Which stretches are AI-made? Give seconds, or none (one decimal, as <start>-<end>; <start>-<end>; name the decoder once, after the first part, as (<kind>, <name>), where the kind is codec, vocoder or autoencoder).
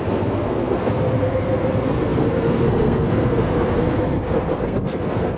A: 0.0-5.4 (codec, SNAC)